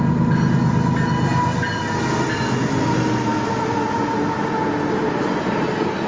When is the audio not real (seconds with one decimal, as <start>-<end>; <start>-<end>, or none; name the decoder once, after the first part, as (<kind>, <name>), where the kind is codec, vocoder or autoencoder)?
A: none